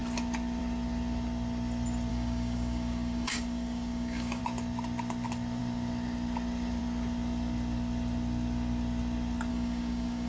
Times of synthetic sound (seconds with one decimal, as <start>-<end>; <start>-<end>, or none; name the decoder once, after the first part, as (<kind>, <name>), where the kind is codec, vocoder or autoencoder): 2.1-4.4 (codec, DAC); 9.5-10.3